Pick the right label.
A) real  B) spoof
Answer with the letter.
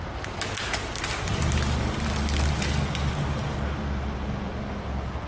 A